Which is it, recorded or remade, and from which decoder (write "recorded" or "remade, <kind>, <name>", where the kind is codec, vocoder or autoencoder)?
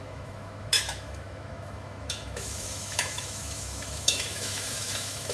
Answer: remade, autoencoder, DAC-VAE